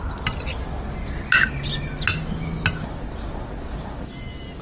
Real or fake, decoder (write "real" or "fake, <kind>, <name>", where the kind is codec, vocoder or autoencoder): real